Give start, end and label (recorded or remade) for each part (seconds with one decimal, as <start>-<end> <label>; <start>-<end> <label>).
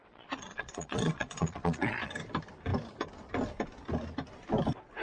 0.0-2.1 remade; 2.1-5.0 recorded